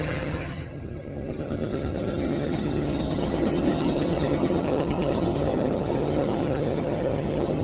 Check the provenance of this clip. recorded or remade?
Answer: remade